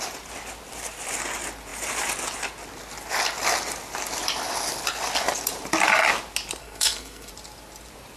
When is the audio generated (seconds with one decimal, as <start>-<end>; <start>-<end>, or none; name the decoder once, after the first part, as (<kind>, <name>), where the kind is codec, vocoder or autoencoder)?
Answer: 6.6-7.3 (codec, SNAC)